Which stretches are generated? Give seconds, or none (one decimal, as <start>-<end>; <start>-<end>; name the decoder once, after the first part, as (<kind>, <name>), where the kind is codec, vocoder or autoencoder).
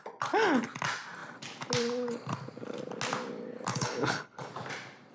3.7-4.5 (codec, HILCodec)